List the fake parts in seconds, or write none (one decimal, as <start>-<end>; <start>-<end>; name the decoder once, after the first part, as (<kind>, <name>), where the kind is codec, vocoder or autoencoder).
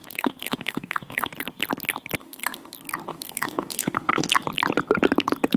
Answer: 0.0-1.3 (autoencoder, DAC-VAE); 2.2-2.7; 3.1-4.3